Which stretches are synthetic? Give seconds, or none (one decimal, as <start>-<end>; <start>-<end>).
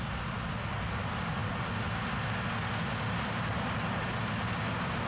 none